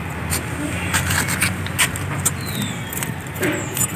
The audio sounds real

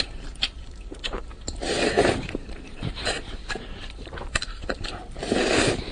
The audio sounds fake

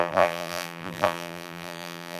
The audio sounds fake